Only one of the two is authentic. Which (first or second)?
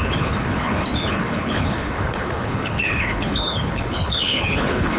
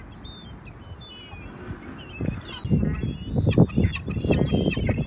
second